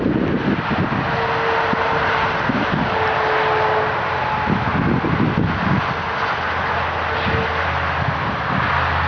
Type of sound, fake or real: real